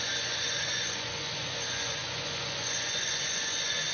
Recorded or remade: remade